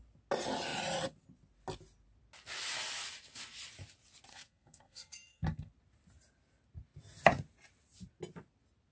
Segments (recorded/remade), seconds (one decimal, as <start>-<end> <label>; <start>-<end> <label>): 0.0-4.3 recorded; 4.3-5.7 remade; 5.7-8.9 recorded